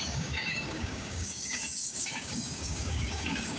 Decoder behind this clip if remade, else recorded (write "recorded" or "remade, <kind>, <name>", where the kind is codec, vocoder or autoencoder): remade, codec, DAC